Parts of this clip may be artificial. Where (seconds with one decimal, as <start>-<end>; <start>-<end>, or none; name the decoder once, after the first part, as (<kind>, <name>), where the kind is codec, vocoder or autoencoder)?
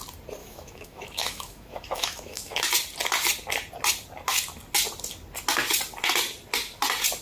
0.4-2.7 (autoencoder, DAC-VAE)